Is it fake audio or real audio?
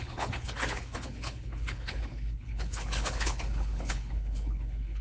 fake